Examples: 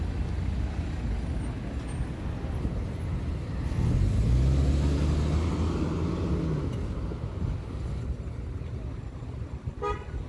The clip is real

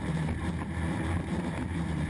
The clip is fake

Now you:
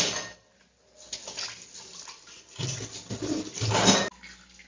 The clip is real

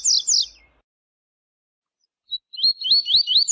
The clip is real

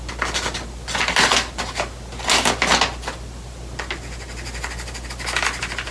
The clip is real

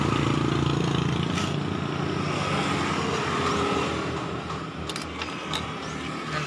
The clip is real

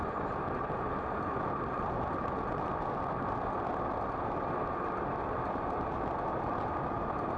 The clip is real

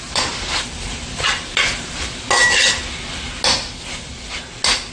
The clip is real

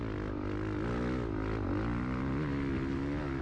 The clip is real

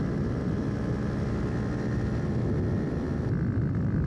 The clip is real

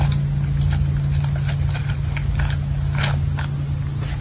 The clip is real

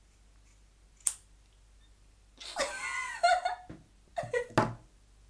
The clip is real